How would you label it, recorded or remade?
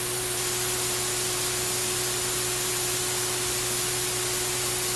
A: recorded